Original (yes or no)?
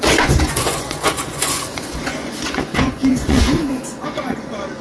no